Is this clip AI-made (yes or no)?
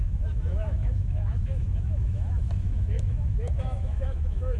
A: yes